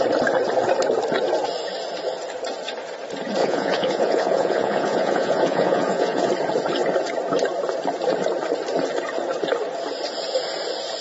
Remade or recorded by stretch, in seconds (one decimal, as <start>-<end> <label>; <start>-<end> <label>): 0.0-3.4 recorded; 3.4-6.3 remade; 6.3-11.0 recorded